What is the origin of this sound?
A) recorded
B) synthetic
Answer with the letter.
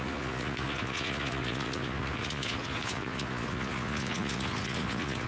B